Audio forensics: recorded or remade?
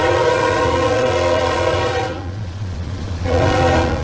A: remade